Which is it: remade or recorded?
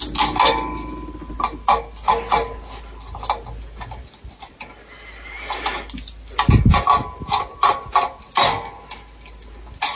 recorded